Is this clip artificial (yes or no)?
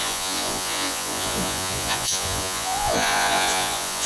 yes